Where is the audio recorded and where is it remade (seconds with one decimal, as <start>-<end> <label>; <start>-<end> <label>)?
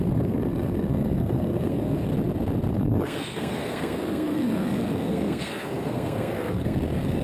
0.0-2.1 remade; 2.1-2.7 recorded; 2.7-7.2 remade